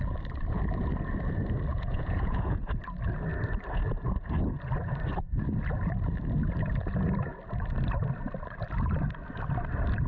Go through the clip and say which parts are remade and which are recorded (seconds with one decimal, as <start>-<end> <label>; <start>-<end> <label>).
0.0-1.7 recorded; 1.7-2.7 remade; 2.7-10.1 recorded